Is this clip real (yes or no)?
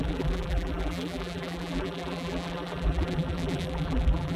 no